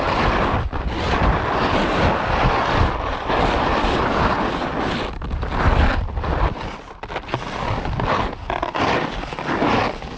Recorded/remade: recorded